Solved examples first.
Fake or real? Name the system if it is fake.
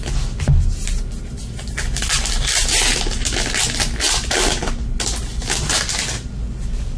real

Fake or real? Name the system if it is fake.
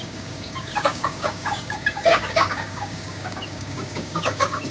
fake, codec, DAC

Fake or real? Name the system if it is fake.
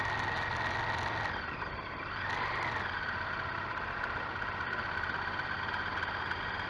real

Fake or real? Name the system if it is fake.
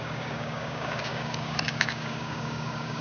fake, codec, DAC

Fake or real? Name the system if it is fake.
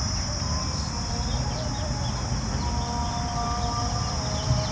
real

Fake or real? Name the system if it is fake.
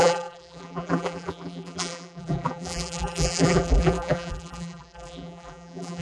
fake, vocoder, BigVGAN v2